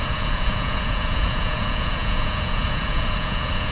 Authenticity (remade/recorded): remade